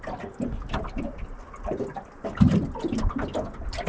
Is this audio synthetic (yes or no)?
no